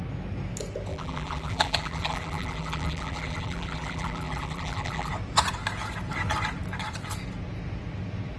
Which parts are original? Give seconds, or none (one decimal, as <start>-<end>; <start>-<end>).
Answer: 0.0-0.9; 5.1-8.4